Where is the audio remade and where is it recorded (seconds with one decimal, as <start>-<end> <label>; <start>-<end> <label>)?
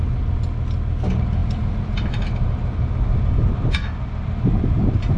0.0-5.2 recorded